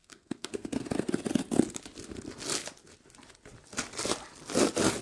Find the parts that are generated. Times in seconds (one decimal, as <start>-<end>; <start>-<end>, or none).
0.0-1.1